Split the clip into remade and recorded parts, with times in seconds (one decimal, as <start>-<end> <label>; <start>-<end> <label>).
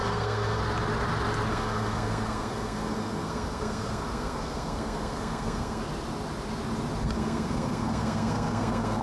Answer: 0.0-0.6 remade; 0.6-1.5 recorded; 1.5-5.8 remade; 5.8-7.0 recorded; 7.0-9.0 remade